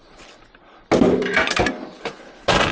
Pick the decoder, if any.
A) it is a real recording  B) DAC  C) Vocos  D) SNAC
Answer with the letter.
A